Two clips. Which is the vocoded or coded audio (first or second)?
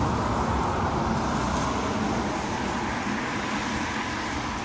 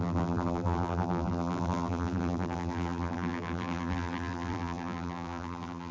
second